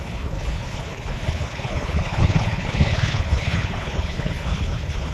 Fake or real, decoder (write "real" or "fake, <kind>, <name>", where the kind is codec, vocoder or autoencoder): fake, codec, HILCodec